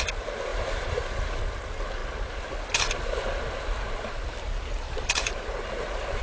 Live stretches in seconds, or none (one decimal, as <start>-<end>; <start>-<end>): 0.0-0.5; 1.4-4.7; 5.6-6.2